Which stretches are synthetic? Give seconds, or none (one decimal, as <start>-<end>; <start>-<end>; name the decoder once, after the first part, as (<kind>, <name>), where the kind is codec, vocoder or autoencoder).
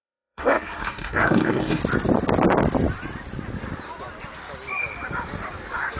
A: 0.0-1.8 (codec, SNAC)